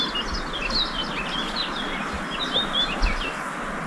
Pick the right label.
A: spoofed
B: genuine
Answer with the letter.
B